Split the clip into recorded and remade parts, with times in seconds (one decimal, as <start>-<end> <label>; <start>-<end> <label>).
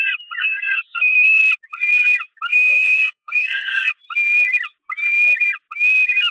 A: 0.0-0.4 recorded; 0.4-1.4 remade; 1.4-2.5 recorded; 2.5-3.9 remade; 3.9-6.3 recorded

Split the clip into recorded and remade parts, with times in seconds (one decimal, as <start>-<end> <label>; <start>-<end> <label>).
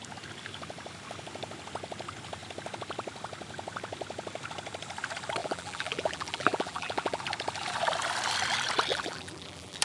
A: 0.0-5.4 recorded; 5.4-7.2 remade; 7.2-8.9 recorded; 8.9-9.8 remade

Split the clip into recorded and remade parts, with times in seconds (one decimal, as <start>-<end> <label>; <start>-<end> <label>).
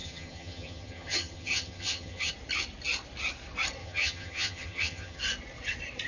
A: 0.0-2.3 remade; 2.3-3.8 recorded; 3.8-5.2 remade; 5.2-6.1 recorded